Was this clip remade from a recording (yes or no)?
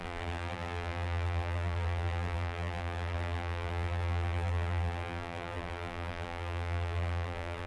yes